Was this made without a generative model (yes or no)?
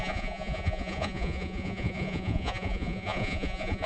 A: no